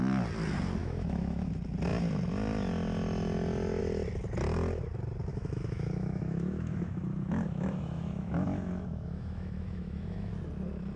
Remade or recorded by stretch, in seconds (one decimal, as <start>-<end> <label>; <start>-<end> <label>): 0.0-0.8 recorded; 0.8-1.5 remade; 1.5-5.3 recorded; 5.3-10.3 remade; 10.3-11.0 recorded